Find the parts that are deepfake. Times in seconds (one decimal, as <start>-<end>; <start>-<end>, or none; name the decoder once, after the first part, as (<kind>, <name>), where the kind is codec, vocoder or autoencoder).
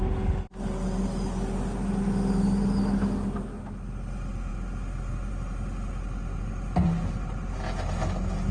none